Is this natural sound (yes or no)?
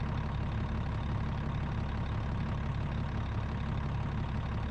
yes